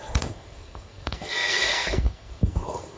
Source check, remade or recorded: remade